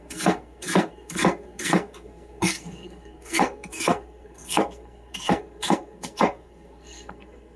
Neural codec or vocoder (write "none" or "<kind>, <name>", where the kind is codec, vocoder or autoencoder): codec, SNAC